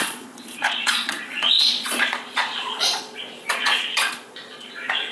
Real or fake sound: fake